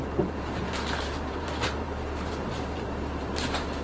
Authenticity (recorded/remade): remade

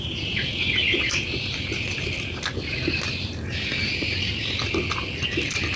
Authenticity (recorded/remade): recorded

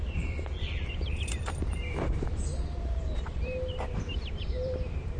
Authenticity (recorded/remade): remade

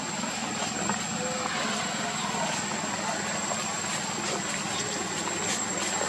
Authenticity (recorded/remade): recorded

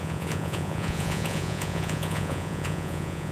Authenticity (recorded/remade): remade